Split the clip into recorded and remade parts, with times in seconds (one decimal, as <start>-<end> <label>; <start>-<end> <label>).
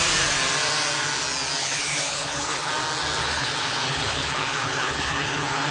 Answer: 0.0-1.6 recorded; 1.6-2.7 remade; 2.7-3.2 recorded; 3.2-5.7 remade